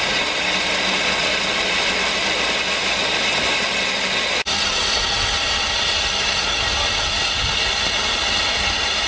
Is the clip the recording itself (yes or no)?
yes